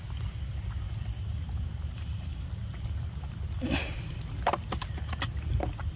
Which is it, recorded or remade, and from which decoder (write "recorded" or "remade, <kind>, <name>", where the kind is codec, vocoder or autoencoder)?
recorded